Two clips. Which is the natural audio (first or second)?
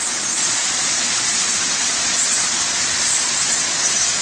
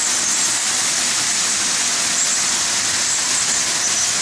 second